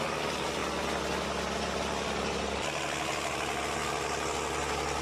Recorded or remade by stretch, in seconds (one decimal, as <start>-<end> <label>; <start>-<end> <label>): 0.0-5.0 recorded